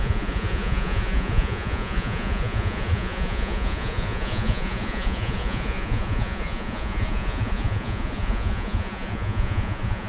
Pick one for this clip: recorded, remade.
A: remade